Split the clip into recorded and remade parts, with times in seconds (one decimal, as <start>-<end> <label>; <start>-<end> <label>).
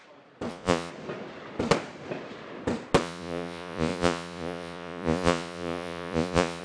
0.0-0.5 recorded; 0.5-0.9 remade; 0.9-3.0 recorded; 3.0-6.6 remade